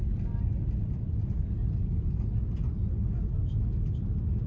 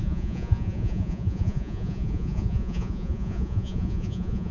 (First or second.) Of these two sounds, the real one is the first